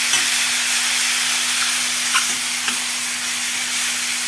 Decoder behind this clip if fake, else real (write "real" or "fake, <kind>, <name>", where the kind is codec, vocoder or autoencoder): real